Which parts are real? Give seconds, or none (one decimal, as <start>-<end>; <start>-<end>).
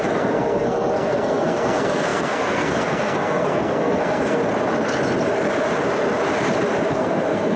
4.4-6.9